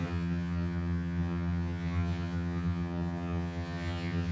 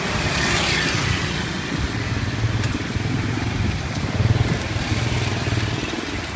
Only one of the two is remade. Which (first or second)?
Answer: first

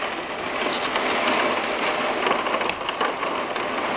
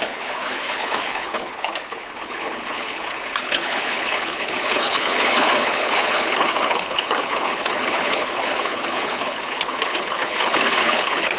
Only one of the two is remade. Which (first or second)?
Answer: second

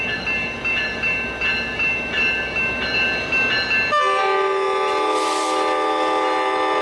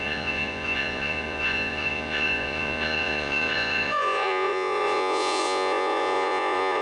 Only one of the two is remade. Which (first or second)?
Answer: second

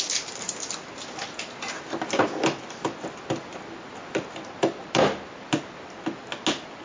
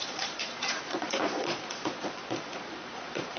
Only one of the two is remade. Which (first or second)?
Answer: second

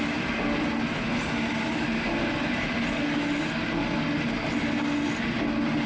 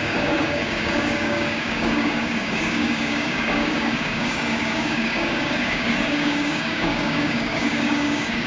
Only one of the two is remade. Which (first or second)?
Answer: second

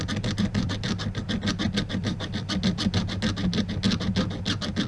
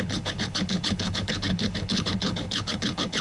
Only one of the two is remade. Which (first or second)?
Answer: second